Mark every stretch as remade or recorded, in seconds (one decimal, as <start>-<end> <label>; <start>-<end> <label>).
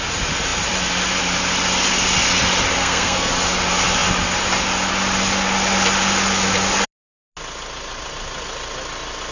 0.0-2.8 recorded; 2.8-3.3 remade; 3.3-9.3 recorded